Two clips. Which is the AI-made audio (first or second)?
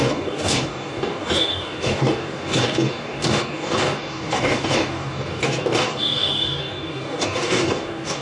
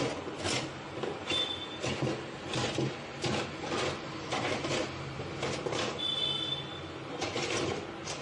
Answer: first